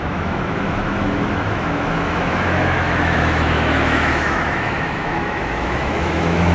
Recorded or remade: remade